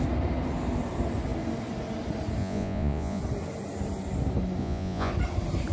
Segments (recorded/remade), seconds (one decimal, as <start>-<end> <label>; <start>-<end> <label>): 0.0-2.4 recorded; 2.4-3.2 remade; 3.2-4.6 recorded; 4.6-5.1 remade; 5.1-5.7 recorded